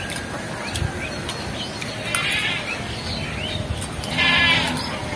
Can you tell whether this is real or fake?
real